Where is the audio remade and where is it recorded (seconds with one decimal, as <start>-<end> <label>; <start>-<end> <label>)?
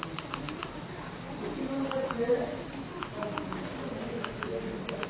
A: 0.0-2.3 recorded; 2.3-3.5 remade; 3.5-3.9 recorded; 3.9-4.6 remade; 4.6-5.1 recorded